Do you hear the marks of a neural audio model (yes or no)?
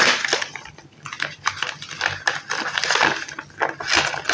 no